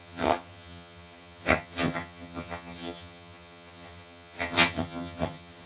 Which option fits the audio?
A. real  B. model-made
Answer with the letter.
B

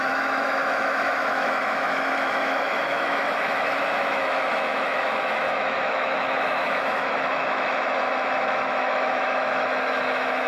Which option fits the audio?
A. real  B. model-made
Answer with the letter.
B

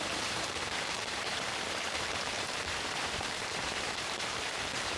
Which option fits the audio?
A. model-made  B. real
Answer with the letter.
A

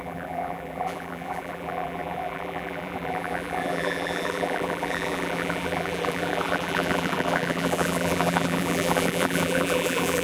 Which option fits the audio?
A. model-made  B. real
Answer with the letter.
A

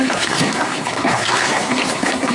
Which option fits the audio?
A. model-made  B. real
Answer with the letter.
A